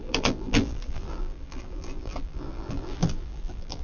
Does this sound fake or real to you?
fake